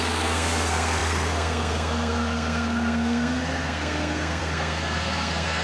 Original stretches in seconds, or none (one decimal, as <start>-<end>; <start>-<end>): none